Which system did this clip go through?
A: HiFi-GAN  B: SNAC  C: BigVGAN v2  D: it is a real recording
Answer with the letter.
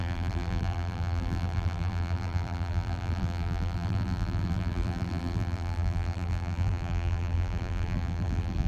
C